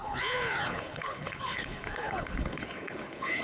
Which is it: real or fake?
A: fake